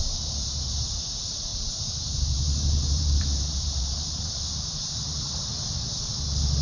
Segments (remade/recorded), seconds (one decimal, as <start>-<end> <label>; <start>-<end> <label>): 0.0-5.5 remade; 5.5-6.6 recorded

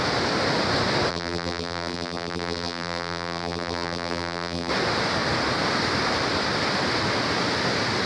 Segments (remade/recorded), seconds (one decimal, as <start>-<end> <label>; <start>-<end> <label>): 0.0-1.1 recorded; 1.1-4.7 remade; 4.7-8.1 recorded

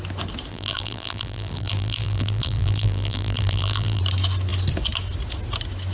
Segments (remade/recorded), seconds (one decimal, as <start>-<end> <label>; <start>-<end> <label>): 0.0-0.5 recorded; 0.5-4.0 remade; 4.0-5.9 recorded

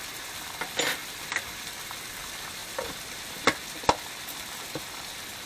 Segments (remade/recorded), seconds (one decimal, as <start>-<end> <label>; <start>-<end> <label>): 0.0-1.0 recorded; 1.0-1.6 remade; 1.6-5.5 recorded

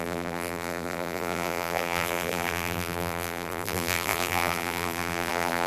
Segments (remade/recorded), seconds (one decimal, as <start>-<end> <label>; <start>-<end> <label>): 0.0-5.7 remade

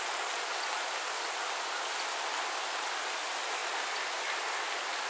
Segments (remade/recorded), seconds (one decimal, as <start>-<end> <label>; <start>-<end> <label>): 0.0-5.1 recorded

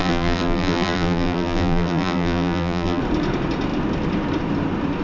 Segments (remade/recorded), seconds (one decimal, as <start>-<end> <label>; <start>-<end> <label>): 0.0-3.0 remade; 3.0-5.0 recorded

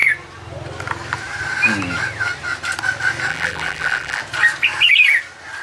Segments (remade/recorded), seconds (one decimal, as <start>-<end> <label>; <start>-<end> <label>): 0.0-3.3 recorded; 3.3-4.2 remade; 4.2-5.6 recorded